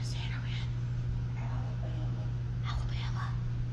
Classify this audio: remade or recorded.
recorded